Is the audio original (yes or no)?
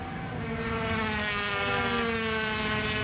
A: yes